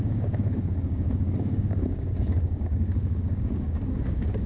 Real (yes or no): no